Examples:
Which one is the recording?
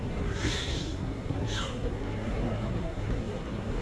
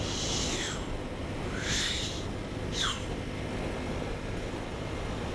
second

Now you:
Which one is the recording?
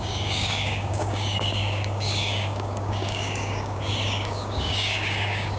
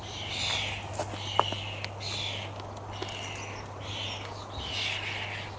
second